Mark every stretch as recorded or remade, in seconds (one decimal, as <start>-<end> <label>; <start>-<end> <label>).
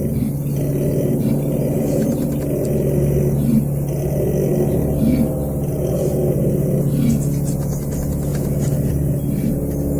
0.0-10.0 recorded